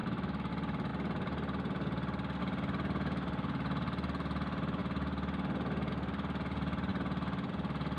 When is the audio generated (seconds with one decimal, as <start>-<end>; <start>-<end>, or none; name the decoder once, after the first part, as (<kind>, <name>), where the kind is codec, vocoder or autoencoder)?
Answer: 0.0-0.5 (autoencoder, DAC-VAE)